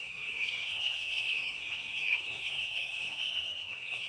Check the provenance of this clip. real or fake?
fake